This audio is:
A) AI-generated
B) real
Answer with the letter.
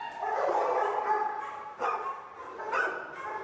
B